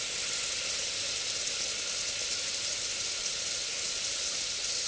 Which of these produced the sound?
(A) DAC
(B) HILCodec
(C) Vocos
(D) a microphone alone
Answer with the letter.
D